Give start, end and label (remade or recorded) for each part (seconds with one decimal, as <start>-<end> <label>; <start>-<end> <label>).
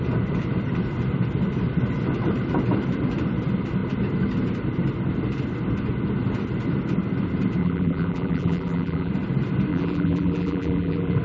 0.0-7.6 recorded; 7.6-9.1 remade; 9.1-9.7 recorded; 9.7-11.2 remade